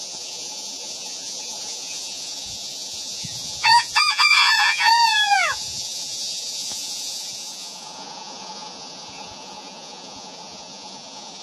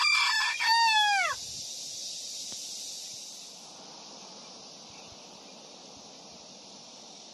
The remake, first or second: first